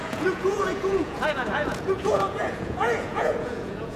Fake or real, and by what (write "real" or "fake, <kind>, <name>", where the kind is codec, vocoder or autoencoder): fake, vocoder, Vocos